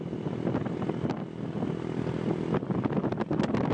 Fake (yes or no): no